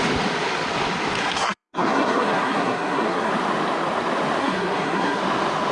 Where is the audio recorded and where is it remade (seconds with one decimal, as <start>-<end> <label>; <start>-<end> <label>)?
0.0-1.2 recorded; 1.2-3.3 remade; 3.3-4.4 recorded; 4.4-5.2 remade; 5.2-5.7 recorded